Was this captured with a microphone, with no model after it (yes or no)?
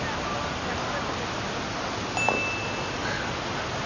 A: yes